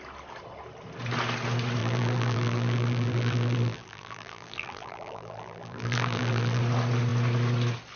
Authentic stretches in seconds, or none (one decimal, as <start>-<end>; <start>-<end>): 0.0-1.8; 6.6-8.0

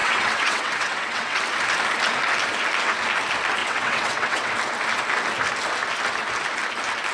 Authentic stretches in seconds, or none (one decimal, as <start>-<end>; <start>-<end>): 1.4-3.6; 4.5-7.1

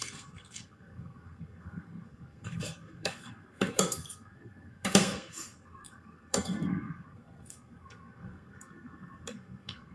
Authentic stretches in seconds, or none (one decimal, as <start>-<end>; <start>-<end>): none

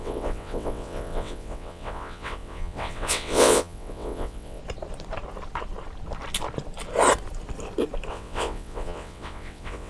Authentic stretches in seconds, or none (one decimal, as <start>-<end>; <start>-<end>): 4.6-8.1